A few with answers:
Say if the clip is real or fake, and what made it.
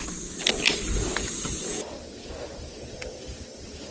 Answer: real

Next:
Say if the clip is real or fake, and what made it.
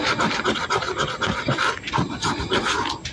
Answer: real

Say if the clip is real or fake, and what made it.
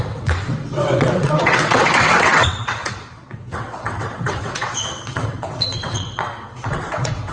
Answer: fake, vocoder, WaveNeXt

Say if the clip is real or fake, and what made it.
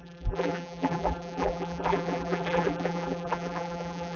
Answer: fake, vocoder, BigVGAN v2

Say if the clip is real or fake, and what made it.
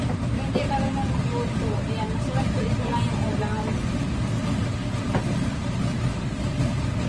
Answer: fake, vocoder, BigVGAN v2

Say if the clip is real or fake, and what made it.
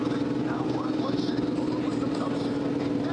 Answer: real